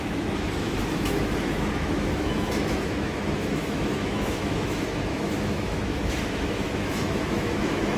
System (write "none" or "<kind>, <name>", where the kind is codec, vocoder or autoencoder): autoencoder, DAC-VAE